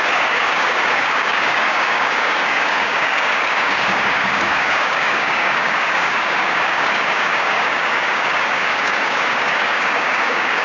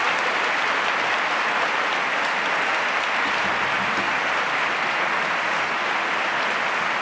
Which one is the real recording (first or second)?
second